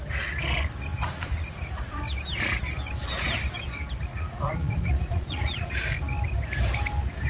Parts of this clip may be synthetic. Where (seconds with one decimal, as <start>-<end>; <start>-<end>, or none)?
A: 0.9-2.0; 4.1-5.7